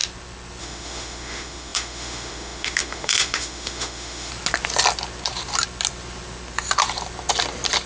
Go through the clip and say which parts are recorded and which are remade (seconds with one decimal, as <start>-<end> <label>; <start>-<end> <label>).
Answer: 0.0-0.6 recorded; 0.6-4.3 remade; 4.3-7.9 recorded